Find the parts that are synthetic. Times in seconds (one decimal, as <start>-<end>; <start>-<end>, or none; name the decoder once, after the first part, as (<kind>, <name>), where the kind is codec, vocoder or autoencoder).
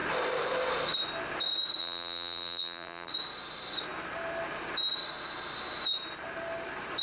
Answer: 1.8-3.1 (vocoder, BigVGAN v2)